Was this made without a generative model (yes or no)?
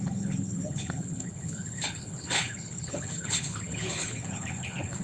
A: no